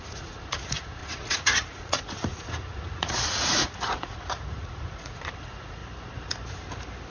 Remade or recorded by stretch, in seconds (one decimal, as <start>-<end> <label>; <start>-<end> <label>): 0.0-5.8 remade; 5.8-7.1 recorded